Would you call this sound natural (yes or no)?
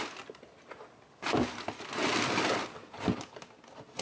yes